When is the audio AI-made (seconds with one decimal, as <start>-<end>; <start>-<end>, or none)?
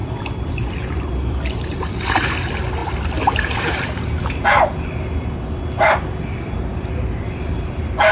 0.0-2.8; 3.6-8.1